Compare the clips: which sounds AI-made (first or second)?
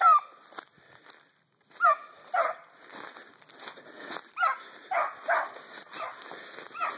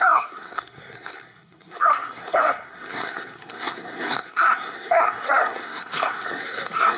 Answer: second